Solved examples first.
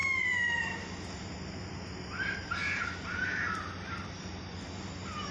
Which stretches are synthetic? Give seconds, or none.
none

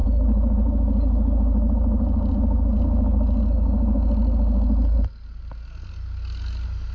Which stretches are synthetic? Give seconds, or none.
none

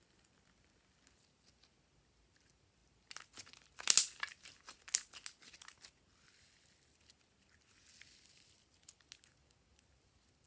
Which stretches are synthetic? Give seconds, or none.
none

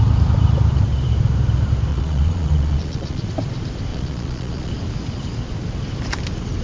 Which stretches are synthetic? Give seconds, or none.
1.9-3.3 (vocoder, Vocos); 3.9-4.7

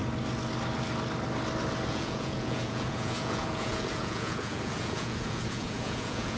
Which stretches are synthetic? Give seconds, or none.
1.9-6.4 (vocoder, Vocos)

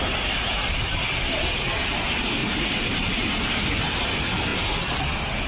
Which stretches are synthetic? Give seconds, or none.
none